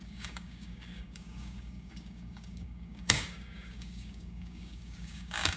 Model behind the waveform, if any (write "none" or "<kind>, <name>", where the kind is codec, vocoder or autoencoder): codec, DAC